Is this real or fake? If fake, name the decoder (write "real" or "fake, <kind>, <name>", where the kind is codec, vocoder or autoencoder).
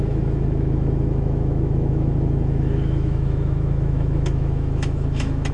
fake, autoencoder, DAC-VAE